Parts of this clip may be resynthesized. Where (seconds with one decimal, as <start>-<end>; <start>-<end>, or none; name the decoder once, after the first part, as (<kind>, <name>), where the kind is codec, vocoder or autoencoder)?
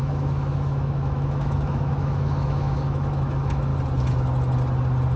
0.0-3.7 (autoencoder, DAC-VAE)